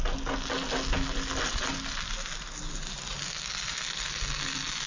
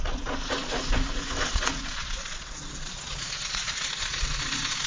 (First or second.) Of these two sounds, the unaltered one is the first